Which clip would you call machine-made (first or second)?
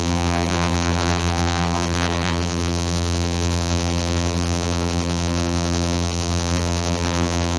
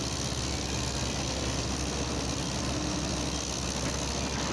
first